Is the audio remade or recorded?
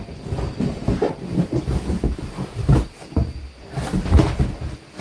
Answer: recorded